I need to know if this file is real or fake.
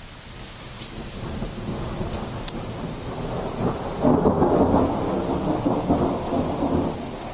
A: real